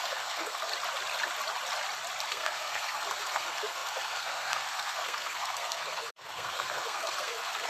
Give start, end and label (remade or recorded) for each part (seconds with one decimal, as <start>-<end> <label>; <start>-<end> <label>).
0.0-0.7 remade; 0.7-2.3 recorded; 2.3-7.7 remade